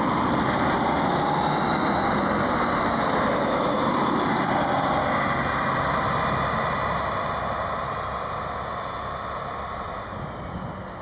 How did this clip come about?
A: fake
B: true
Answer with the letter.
B